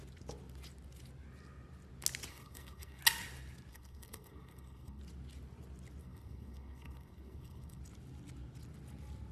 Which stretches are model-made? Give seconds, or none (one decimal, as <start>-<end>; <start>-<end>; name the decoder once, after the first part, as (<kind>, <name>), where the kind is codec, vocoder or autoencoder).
2.3-3.0 (codec, SNAC); 3.7-5.0; 6.0-7.8